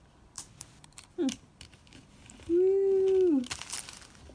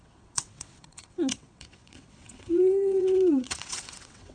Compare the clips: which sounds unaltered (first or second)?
first